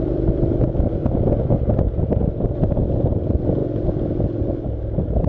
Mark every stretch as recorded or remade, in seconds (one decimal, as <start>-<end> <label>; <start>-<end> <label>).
0.0-1.0 remade; 1.0-2.0 recorded; 2.0-5.3 remade